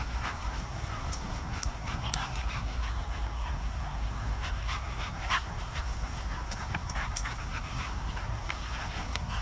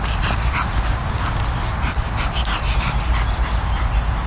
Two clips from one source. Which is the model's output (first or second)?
first